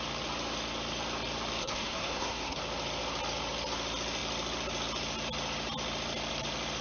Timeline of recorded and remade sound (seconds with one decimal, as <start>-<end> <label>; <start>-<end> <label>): 0.0-1.6 recorded; 1.6-2.6 remade; 2.6-6.8 recorded

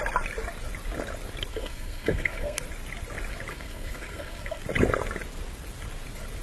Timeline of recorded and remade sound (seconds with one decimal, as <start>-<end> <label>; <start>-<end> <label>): 0.0-1.5 recorded; 1.5-2.6 remade; 2.6-3.5 recorded; 3.5-4.6 remade; 4.6-6.4 recorded

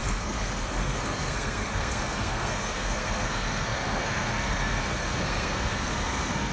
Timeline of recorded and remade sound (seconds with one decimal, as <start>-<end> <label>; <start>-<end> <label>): 0.0-6.5 remade